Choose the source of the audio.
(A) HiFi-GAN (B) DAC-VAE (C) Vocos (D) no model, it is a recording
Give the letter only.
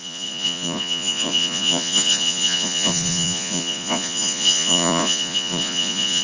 C